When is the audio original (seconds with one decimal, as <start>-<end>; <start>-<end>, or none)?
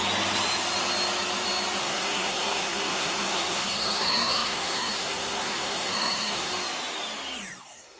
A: 0.0-1.8; 6.5-7.6